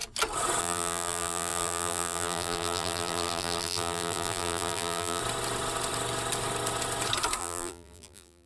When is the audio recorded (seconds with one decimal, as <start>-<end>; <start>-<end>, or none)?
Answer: 0.0-0.6; 5.2-7.4

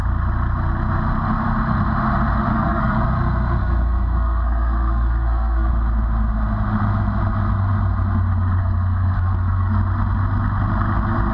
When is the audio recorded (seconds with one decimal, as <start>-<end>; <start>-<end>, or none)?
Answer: 0.0-2.5; 3.0-3.6; 5.7-8.6; 9.8-11.3

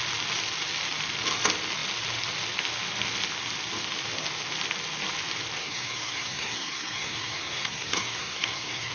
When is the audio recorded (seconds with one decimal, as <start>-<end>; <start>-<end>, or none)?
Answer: 0.0-5.6

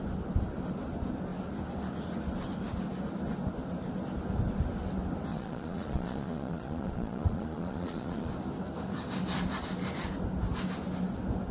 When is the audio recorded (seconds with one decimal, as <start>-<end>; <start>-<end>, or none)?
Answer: 0.0-5.3; 8.3-11.5

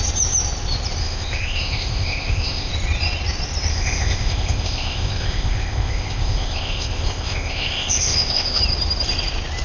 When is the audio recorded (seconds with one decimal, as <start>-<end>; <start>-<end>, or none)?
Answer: 0.0-1.0; 2.7-3.7; 8.6-9.6

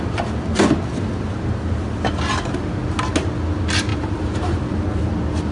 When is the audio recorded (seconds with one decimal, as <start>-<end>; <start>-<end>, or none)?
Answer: 0.0-3.9; 4.6-5.5

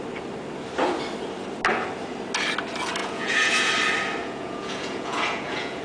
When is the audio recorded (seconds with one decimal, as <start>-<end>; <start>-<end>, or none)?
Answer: 0.0-3.0; 3.7-4.2

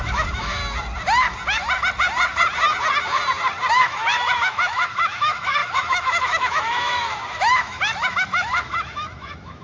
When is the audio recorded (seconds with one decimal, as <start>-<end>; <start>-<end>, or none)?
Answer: 0.6-3.7